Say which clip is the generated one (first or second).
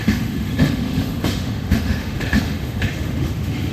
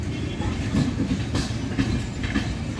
first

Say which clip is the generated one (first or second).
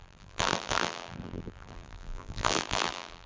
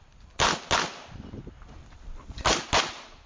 first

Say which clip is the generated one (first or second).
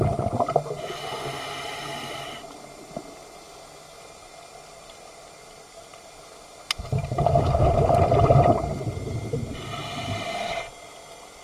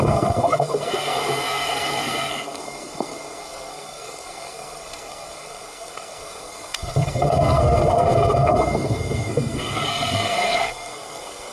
second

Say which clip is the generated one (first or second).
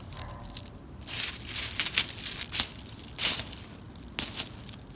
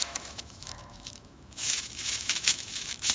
second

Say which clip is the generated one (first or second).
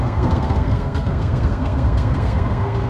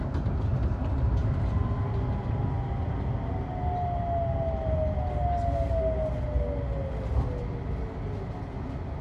first